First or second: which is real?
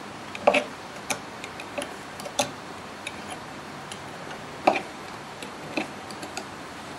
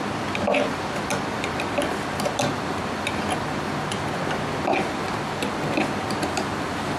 second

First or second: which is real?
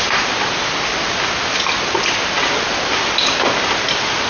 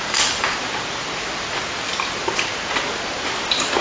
first